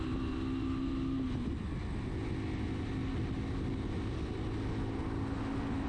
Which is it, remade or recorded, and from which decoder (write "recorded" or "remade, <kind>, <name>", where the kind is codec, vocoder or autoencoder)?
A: recorded